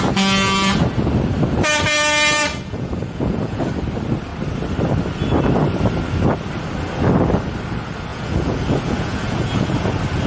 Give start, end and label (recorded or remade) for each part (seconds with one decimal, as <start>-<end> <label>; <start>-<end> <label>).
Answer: 0.0-2.5 recorded; 2.5-3.7 remade; 3.7-8.1 recorded; 8.1-9.9 remade; 9.9-10.3 recorded